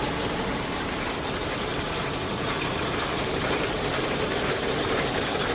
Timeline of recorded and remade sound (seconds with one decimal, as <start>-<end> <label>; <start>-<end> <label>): 0.0-5.5 remade